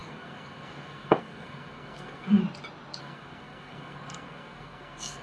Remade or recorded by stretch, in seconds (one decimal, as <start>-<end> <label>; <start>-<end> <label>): 0.0-2.4 remade; 2.4-3.0 recorded; 3.0-5.2 remade

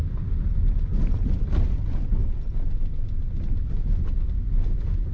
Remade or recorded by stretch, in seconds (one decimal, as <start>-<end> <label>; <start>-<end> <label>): 0.0-5.1 recorded

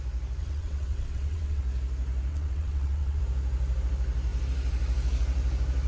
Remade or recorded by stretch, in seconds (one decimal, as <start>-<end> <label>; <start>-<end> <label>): 0.0-0.4 recorded; 0.4-1.6 remade; 1.6-2.3 recorded; 2.3-3.2 remade; 3.2-5.9 recorded

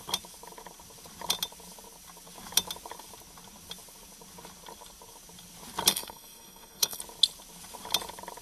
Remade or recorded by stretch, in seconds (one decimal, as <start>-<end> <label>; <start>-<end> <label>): 0.0-5.9 recorded; 5.9-7.0 remade; 7.0-8.4 recorded

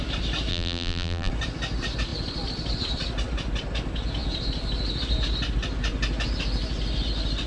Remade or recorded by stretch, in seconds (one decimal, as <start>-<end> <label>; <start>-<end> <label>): 0.0-0.5 recorded; 0.5-1.3 remade; 1.3-7.5 recorded